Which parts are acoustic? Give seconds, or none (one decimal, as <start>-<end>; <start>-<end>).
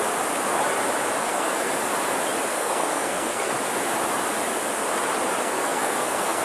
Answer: 0.0-1.2; 1.7-2.5; 3.5-5.4